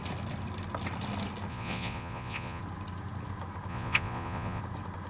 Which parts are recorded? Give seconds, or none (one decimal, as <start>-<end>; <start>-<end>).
0.0-1.5; 2.6-3.7; 4.6-5.1